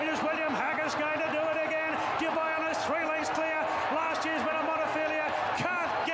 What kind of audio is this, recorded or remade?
recorded